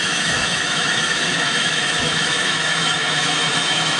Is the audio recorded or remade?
remade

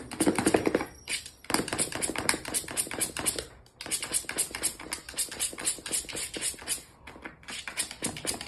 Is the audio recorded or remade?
recorded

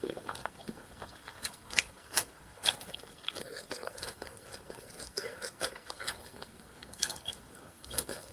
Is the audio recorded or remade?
remade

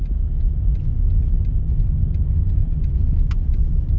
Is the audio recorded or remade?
recorded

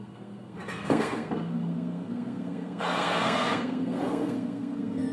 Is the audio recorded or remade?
remade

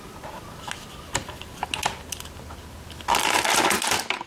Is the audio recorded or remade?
recorded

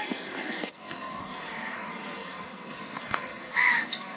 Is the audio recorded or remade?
remade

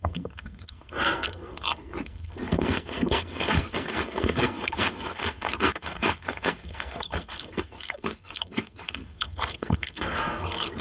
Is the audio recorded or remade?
remade